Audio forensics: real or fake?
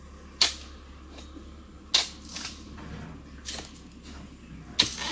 real